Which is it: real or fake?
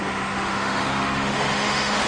fake